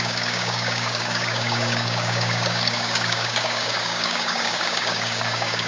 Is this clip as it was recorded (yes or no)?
no